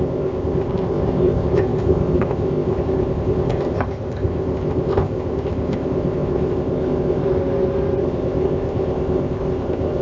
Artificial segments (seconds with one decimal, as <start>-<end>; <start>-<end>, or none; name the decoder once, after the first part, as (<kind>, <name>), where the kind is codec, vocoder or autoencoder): 0.0-7.2 (codec, ZipCodec); 8.0-10.0